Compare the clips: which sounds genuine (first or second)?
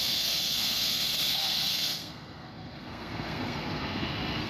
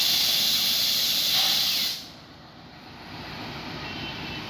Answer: second